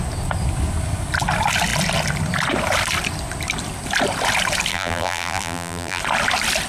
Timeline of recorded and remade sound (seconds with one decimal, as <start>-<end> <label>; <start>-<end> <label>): 0.0-4.7 recorded; 4.7-6.0 remade; 6.0-6.7 recorded